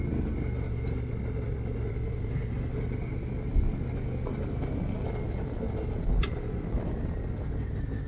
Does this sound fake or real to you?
real